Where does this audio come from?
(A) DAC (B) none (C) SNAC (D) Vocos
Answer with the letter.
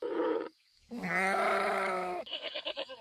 A